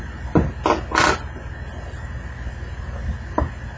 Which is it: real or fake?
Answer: real